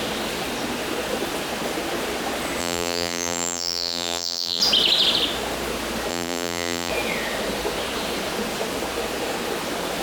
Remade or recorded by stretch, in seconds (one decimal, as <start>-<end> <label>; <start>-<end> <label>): 0.0-2.6 recorded; 2.6-4.6 remade; 4.6-6.1 recorded; 6.1-6.9 remade; 6.9-10.0 recorded